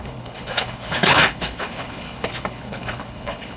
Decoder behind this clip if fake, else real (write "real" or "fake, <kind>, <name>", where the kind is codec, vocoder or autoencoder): fake, codec, HILCodec